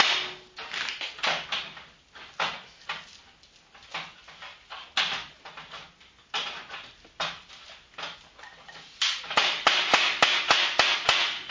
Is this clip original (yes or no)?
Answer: yes